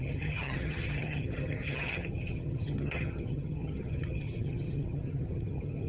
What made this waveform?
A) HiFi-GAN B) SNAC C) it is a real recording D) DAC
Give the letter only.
A